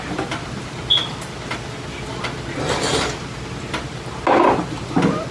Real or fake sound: real